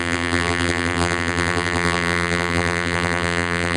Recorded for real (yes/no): no